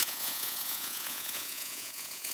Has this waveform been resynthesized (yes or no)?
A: yes